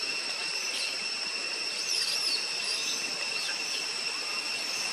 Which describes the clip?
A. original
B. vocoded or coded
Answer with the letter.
B